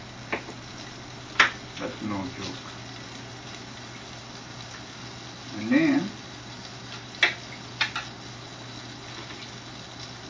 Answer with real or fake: real